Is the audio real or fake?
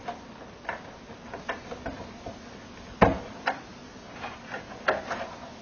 real